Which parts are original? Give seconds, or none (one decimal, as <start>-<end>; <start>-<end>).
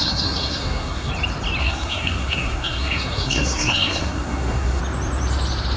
1.1-1.6; 4.8-5.8